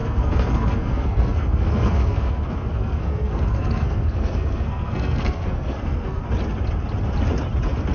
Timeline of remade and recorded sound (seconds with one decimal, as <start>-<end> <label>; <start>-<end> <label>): 0.0-6.2 remade; 6.2-7.9 recorded